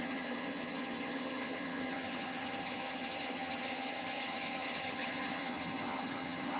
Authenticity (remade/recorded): remade